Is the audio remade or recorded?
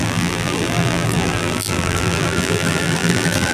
remade